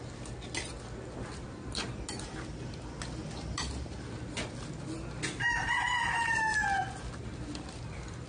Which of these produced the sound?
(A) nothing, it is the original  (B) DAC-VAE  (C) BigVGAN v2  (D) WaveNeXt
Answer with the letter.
A